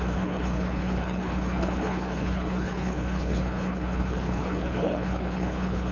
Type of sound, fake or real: fake